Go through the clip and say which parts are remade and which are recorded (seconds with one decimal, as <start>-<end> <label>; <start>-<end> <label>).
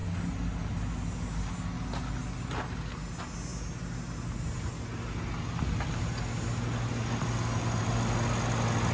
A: 0.0-8.9 recorded